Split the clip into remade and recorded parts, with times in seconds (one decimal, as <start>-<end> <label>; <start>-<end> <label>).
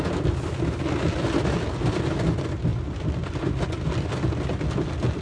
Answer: 0.0-5.2 recorded